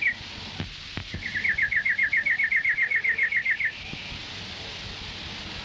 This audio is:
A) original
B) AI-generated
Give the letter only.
A